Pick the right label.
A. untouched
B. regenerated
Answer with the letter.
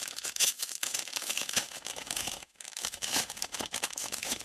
B